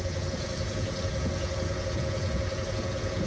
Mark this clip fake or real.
fake